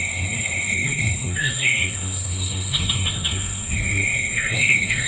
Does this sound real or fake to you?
fake